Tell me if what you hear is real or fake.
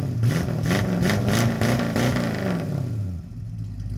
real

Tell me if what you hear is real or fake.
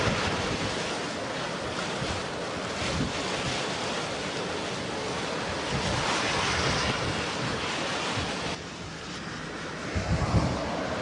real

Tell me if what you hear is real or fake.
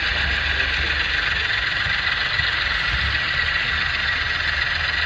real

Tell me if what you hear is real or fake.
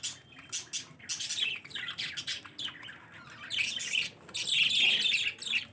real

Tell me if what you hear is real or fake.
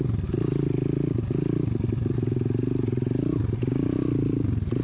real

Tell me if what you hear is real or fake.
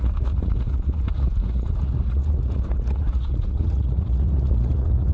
fake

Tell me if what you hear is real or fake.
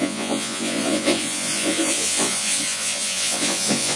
fake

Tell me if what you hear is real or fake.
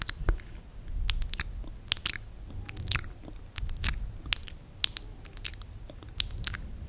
real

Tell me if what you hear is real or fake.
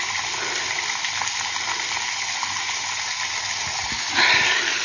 real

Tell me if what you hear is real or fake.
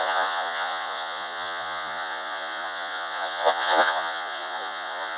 fake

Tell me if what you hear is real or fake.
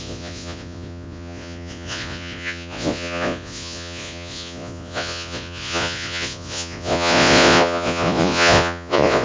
fake